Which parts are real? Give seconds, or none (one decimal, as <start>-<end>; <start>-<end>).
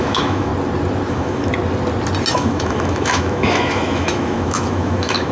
0.5-1.1; 1.5-2.3